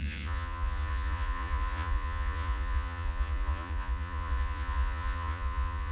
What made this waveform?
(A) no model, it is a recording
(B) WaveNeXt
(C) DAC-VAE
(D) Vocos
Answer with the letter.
D